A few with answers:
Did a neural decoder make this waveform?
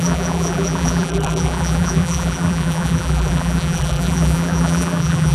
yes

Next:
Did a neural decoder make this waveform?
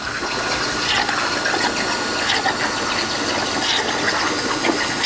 no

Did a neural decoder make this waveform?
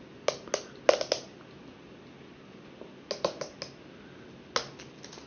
no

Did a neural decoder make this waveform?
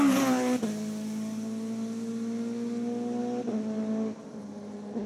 no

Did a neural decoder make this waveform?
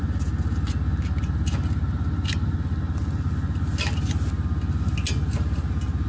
no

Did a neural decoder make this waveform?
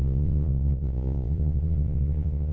yes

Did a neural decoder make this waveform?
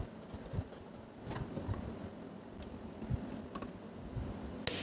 no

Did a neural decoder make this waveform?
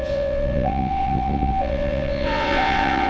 yes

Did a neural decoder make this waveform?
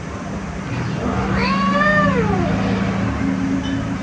no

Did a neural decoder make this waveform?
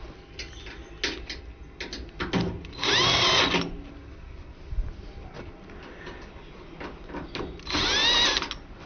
no